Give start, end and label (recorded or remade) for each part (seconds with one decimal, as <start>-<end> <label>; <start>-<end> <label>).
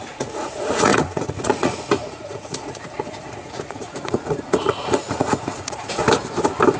0.0-6.0 remade; 6.0-6.8 recorded